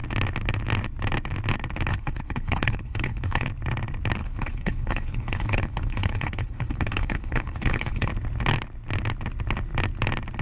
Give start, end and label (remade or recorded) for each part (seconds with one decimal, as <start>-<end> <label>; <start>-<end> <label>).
0.0-1.9 recorded; 1.9-3.5 remade; 3.5-4.2 recorded; 4.2-8.1 remade; 8.1-10.4 recorded